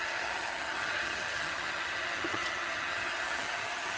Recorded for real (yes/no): no